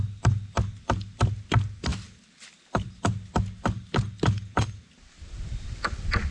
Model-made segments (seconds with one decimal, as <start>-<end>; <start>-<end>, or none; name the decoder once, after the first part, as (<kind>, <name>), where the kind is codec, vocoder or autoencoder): none